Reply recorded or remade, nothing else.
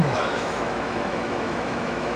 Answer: remade